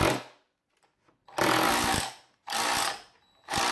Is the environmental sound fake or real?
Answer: real